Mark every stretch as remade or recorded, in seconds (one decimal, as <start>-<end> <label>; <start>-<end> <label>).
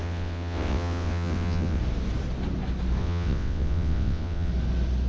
0.0-1.8 remade; 1.8-3.0 recorded; 3.0-4.5 remade; 4.5-5.1 recorded